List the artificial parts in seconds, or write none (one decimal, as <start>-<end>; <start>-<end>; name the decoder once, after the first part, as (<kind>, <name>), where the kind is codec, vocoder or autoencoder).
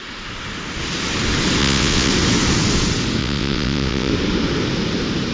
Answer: 1.6-2.1 (vocoder, WaveNeXt); 3.2-4.1